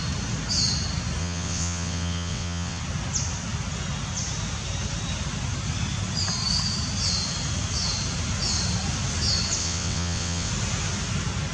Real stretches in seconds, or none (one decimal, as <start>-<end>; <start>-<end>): 0.0-1.2; 2.8-9.6; 10.5-11.5